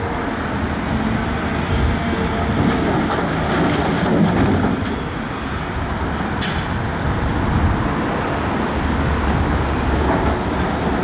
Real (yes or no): yes